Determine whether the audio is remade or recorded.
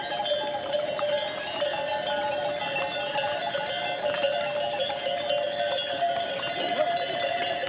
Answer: recorded